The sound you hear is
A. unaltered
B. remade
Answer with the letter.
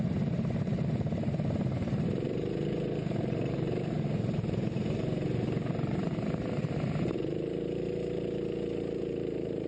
B